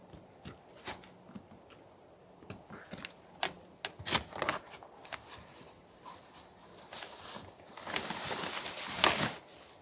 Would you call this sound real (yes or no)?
yes